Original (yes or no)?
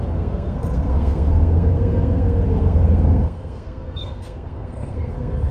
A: no